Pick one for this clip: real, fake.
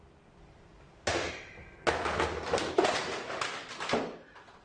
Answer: real